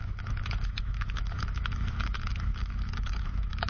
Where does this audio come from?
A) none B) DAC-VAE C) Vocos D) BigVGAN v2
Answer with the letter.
B